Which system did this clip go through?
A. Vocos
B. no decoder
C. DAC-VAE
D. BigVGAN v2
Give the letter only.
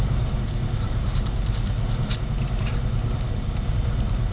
D